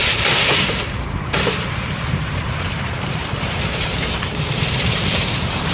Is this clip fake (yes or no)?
yes